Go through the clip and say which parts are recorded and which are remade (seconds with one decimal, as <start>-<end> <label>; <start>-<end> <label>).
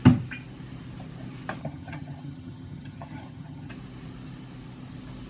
0.0-1.6 recorded; 1.6-3.7 remade; 3.7-5.3 recorded